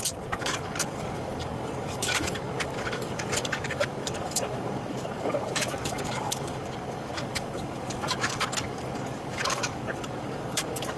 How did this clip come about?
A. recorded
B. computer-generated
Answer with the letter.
B